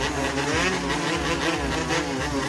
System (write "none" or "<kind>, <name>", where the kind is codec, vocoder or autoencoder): none